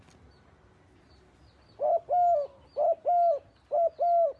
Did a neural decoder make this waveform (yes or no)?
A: no